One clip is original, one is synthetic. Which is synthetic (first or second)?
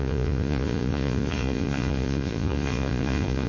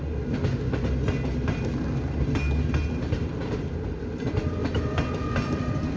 first